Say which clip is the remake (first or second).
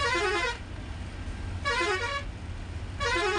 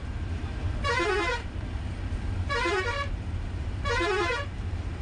second